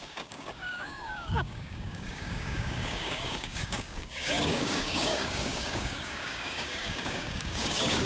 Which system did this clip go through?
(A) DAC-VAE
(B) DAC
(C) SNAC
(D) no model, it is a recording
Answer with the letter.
B